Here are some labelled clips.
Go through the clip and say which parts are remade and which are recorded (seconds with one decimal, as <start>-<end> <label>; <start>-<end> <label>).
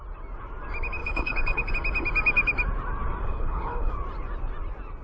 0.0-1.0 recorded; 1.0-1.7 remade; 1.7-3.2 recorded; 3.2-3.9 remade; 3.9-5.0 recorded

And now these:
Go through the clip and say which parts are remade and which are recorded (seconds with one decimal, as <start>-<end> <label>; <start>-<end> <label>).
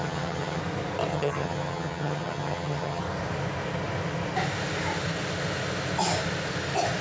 0.0-0.6 remade; 0.6-1.1 recorded; 1.1-3.0 remade; 3.0-7.0 recorded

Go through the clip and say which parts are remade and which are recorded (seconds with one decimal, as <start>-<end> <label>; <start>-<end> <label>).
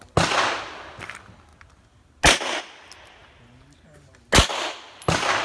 0.0-5.4 recorded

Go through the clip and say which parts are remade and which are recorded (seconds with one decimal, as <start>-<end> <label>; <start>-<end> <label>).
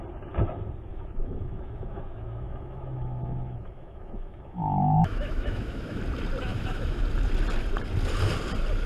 0.0-0.9 recorded; 0.9-6.0 remade; 6.0-6.5 recorded; 6.5-7.0 remade; 7.0-8.9 recorded